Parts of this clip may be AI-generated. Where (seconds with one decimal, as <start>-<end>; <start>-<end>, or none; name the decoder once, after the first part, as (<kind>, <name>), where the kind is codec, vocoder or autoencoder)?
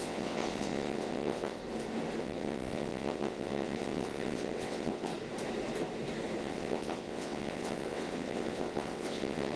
0.0-1.6 (vocoder, WaveNeXt); 2.2-5.1; 6.4-9.6